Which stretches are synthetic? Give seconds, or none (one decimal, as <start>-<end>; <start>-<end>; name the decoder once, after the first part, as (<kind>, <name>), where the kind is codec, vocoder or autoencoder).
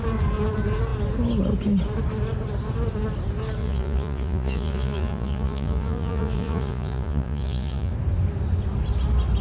3.6-7.9 (vocoder, Vocos)